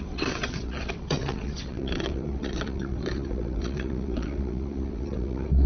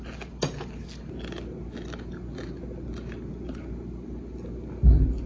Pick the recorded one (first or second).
second